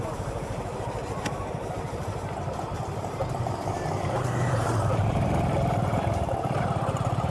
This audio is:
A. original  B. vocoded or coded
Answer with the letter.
B